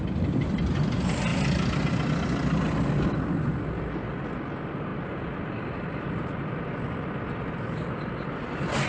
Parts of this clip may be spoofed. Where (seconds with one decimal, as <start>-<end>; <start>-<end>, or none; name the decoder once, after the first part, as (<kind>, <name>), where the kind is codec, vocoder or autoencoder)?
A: none